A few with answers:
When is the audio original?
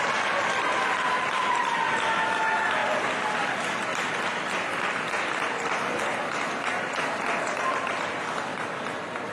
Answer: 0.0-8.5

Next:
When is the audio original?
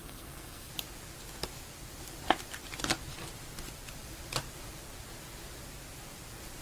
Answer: 0.7-6.6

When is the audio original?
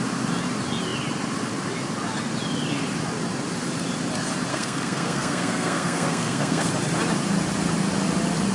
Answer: 0.0-4.5; 6.7-8.5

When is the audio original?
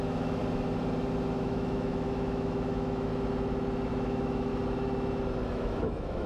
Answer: 0.4-1.4; 3.1-3.9; 4.5-5.5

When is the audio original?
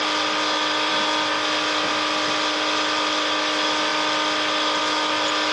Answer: 0.0-5.5